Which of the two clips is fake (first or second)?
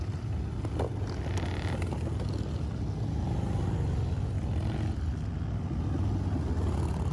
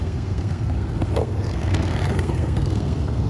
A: second